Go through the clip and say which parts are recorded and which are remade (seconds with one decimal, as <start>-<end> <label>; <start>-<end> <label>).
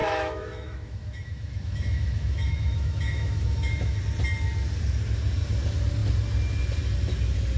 0.0-4.0 remade; 4.0-7.6 recorded